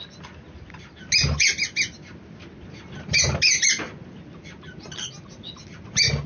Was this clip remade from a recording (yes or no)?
no